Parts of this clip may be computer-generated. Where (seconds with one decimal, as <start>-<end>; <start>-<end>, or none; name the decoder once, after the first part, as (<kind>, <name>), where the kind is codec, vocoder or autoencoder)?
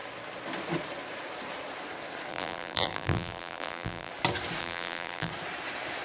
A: 2.3-4.1 (vocoder, BigVGAN v2); 4.6-5.3